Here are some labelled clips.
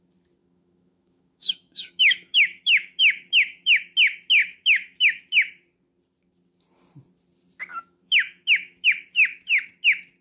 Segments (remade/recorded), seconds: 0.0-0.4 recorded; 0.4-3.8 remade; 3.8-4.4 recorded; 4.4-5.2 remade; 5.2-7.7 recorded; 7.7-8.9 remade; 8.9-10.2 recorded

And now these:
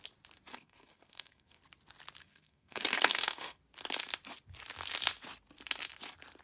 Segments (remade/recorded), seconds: 0.0-0.5 recorded; 0.5-1.6 remade; 1.6-2.2 recorded; 2.2-3.6 remade; 3.6-6.4 recorded

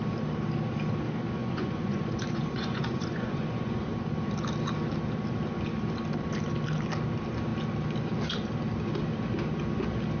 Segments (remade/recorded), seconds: 0.0-1.4 recorded; 1.4-3.9 remade; 3.9-10.2 recorded

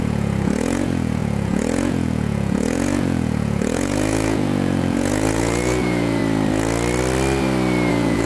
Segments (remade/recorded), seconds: 0.0-6.2 remade; 6.2-7.9 recorded; 7.9-8.3 remade

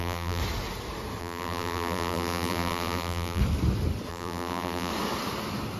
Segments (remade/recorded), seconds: 0.0-0.4 remade; 0.4-1.2 recorded; 1.2-3.4 remade; 3.4-4.1 recorded; 4.1-4.9 remade; 4.9-5.8 recorded

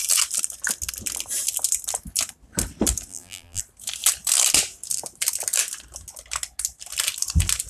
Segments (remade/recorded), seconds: 0.0-3.1 recorded; 3.1-3.6 remade; 3.6-7.7 recorded

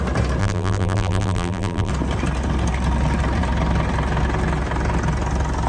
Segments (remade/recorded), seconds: 0.0-0.4 recorded; 0.4-1.9 remade; 1.9-5.7 recorded